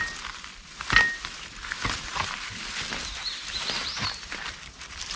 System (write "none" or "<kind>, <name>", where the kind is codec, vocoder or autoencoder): none